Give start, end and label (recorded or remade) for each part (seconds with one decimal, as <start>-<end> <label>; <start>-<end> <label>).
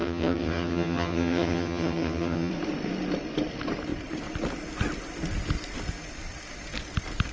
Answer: 0.0-2.5 remade; 2.5-7.3 recorded